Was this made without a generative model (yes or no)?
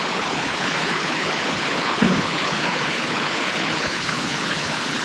no